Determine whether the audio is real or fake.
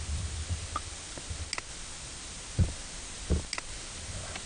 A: real